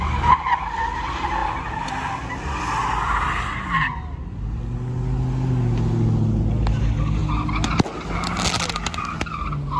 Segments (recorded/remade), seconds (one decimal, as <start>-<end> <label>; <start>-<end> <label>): 0.0-9.8 recorded